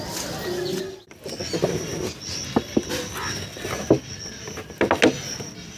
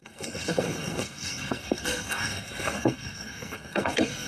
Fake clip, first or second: second